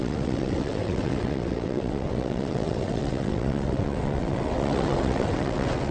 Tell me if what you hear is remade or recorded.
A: remade